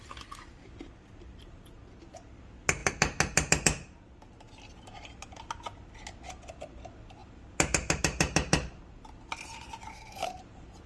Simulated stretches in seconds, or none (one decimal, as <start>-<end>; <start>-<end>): 9.9-10.4